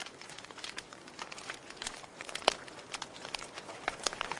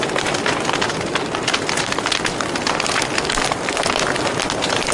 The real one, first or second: second